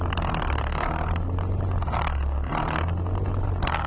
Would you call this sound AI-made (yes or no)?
no